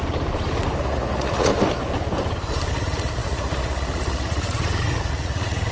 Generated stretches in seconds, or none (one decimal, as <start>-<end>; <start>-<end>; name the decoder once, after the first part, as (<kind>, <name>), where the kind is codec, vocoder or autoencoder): 0.8-1.5 (vocoder, Vocos); 2.7-5.7